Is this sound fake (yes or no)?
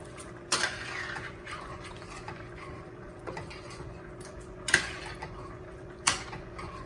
yes